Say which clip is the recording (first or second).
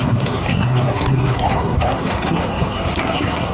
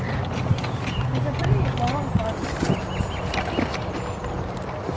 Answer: second